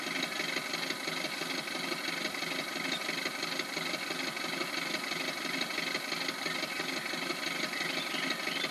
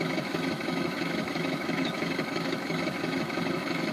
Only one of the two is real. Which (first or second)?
first